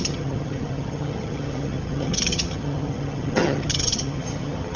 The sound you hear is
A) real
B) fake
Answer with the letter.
B